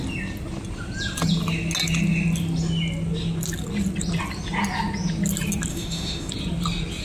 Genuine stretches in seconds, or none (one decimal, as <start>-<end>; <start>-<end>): 0.0-5.7; 6.3-7.0